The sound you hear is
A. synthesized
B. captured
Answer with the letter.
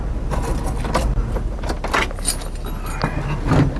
B